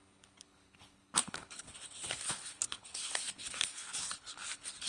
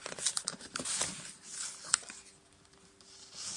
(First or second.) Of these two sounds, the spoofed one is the first